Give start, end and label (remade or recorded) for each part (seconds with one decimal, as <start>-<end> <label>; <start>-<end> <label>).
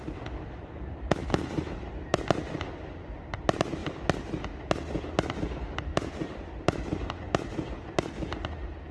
0.0-1.2 recorded; 1.2-1.8 remade; 1.8-8.9 recorded